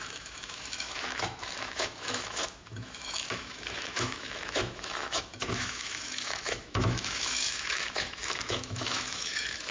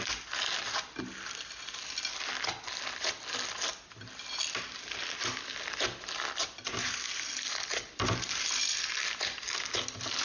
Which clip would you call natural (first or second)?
second